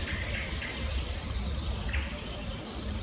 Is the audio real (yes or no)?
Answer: yes